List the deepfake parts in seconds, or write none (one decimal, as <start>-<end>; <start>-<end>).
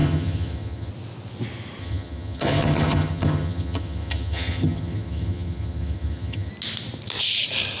0.0-0.9; 1.8-6.5